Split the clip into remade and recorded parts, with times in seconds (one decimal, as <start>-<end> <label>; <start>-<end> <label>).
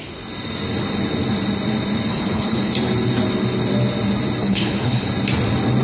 0.0-2.1 recorded; 2.1-2.7 remade; 2.7-4.4 recorded; 4.4-5.1 remade; 5.1-5.8 recorded